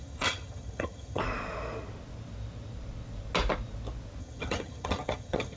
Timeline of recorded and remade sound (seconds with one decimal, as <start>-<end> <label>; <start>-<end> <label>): 0.0-1.2 remade; 1.2-4.2 recorded; 4.2-5.6 remade